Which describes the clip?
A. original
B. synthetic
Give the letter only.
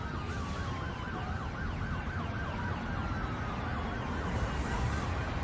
A